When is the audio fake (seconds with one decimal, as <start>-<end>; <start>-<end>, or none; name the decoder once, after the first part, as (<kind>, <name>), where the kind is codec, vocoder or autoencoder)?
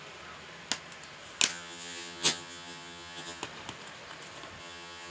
1.5-3.4 (vocoder, HiFi-GAN); 4.6-5.1